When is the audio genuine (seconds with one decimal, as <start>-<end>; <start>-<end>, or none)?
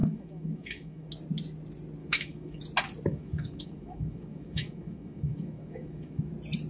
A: 1.1-2.0; 2.6-3.1; 6.3-6.7